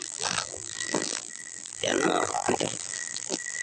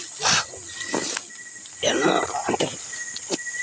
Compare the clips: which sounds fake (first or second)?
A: first